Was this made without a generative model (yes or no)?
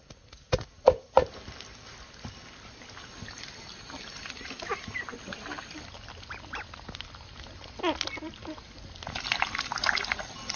yes